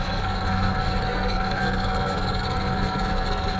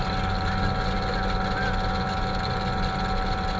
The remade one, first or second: first